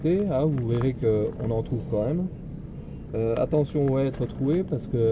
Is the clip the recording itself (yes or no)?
yes